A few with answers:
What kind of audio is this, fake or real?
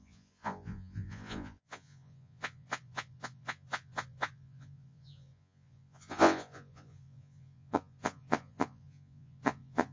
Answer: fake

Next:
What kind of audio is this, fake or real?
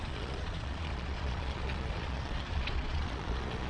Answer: fake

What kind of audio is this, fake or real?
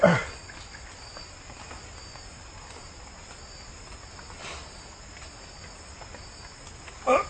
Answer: real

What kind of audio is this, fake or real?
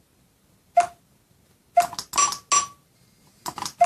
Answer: real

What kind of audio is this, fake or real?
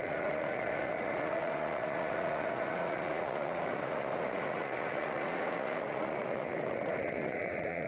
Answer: fake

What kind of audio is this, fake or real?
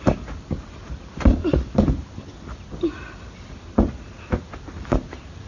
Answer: real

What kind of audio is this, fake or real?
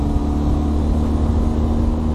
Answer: real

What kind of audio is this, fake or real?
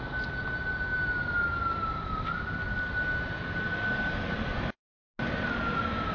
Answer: real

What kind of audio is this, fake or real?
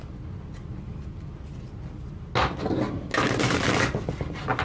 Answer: real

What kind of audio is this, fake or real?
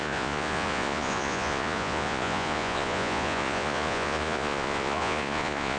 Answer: fake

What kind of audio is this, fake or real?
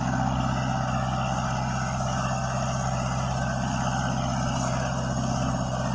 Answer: real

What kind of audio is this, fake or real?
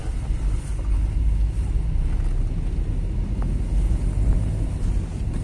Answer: real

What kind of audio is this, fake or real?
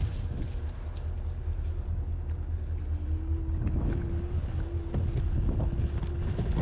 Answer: real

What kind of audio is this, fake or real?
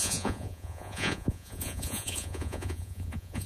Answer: fake